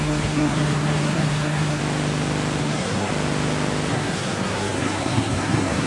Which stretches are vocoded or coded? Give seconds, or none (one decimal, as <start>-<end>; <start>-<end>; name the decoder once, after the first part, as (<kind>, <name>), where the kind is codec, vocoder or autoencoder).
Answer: 0.0-1.8 (codec, SNAC); 2.6-3.1; 3.9-5.9